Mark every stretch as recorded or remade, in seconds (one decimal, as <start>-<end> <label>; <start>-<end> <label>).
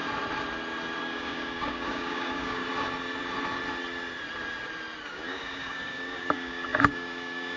0.0-1.0 recorded; 1.0-2.6 remade; 2.6-5.1 recorded; 5.1-7.6 remade